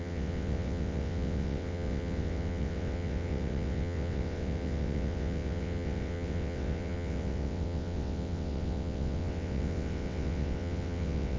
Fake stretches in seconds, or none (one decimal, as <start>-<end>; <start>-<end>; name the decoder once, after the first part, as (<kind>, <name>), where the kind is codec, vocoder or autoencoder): 0.0-11.4 (vocoder, WaveNeXt)